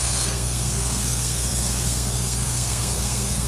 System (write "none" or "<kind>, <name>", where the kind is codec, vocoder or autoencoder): codec, SNAC